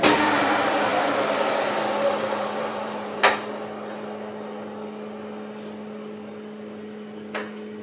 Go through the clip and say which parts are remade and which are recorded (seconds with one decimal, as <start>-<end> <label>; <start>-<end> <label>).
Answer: 0.0-0.9 recorded; 0.9-3.3 remade; 3.3-7.8 recorded